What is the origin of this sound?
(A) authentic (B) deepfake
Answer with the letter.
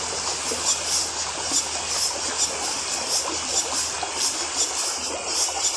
A